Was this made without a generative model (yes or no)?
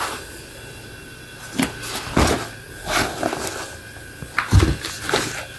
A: yes